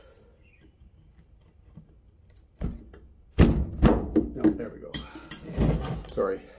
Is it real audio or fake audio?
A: real